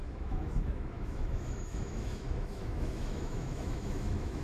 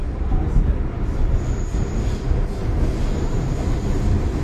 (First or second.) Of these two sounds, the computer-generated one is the first